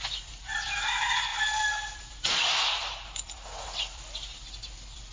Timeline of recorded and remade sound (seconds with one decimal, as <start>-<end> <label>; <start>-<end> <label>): 0.0-5.1 recorded